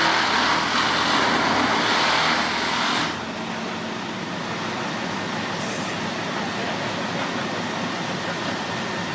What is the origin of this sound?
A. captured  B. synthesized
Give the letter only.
A